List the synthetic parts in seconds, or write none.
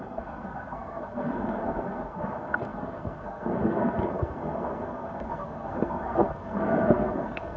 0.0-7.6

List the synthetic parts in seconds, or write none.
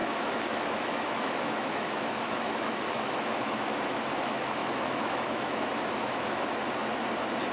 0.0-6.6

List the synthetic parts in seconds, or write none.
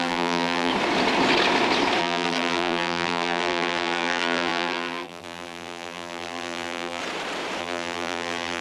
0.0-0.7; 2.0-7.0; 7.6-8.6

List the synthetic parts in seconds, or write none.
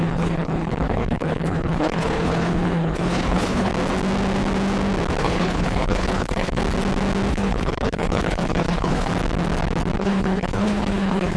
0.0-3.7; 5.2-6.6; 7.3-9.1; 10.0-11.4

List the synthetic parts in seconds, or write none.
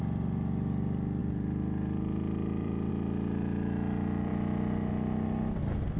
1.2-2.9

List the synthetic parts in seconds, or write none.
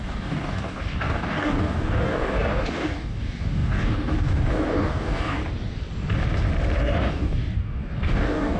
0.0-5.4; 6.8-8.6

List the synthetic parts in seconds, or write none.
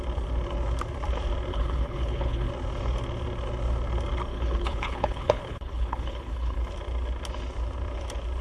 1.5-2.5; 4.3-6.6